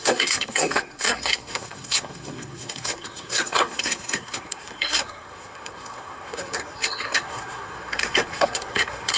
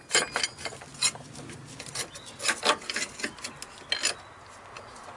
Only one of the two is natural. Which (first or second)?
second